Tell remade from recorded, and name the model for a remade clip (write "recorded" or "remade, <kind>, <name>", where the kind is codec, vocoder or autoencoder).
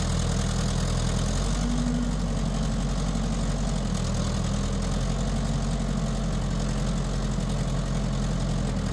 recorded